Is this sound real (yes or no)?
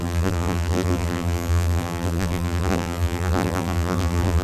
no